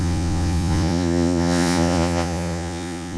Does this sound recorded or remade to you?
remade